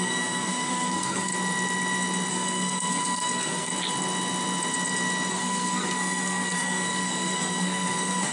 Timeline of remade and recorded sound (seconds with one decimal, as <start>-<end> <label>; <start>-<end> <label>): 0.0-1.3 remade; 1.3-2.3 recorded; 2.3-3.7 remade; 3.7-5.3 recorded; 5.3-8.3 remade